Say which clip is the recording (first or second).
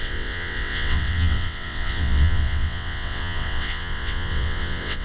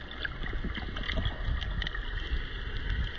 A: second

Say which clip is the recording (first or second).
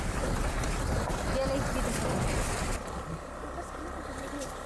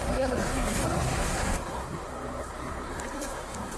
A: first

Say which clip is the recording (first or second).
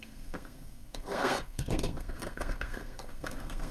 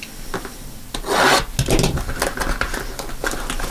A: second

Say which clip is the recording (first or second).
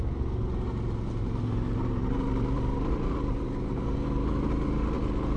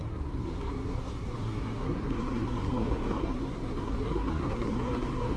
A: first